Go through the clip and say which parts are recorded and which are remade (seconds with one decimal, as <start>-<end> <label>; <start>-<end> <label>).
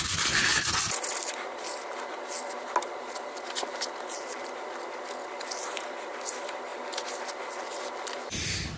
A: 0.0-8.8 recorded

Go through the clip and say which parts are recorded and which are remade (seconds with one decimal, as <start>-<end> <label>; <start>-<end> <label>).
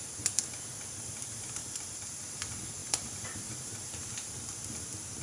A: 0.0-1.6 recorded; 1.6-2.2 remade; 2.2-2.8 recorded; 2.8-4.1 remade; 4.1-5.2 recorded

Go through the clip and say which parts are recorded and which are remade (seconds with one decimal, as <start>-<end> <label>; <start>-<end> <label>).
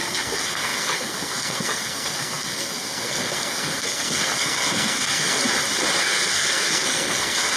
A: 0.0-5.4 remade; 5.4-6.0 recorded; 6.0-7.6 remade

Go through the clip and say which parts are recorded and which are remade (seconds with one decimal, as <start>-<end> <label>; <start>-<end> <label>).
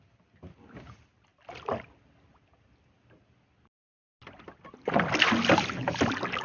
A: 0.0-6.4 recorded